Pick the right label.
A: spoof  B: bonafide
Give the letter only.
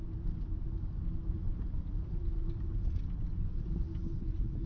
B